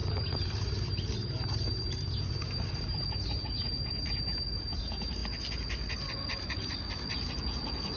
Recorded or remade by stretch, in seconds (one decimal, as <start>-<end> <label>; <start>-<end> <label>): 0.0-5.2 remade; 5.2-8.0 recorded